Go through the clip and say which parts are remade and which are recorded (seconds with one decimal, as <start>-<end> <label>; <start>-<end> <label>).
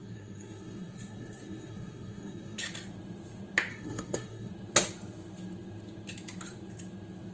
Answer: 0.0-2.6 remade; 2.6-3.7 recorded; 3.7-4.5 remade; 4.5-7.3 recorded